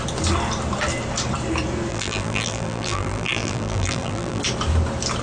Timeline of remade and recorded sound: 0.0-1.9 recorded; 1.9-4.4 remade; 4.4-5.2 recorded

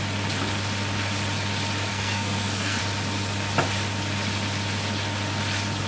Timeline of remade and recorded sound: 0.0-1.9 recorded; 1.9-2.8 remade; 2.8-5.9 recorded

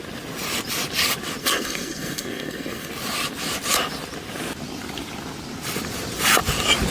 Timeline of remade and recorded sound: 0.0-1.4 recorded; 1.4-2.9 remade; 2.9-6.9 recorded

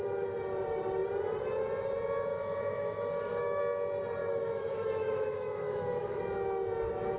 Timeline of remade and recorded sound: 0.0-2.3 recorded; 2.3-3.6 remade; 3.6-4.2 recorded; 4.2-6.2 remade; 6.2-7.2 recorded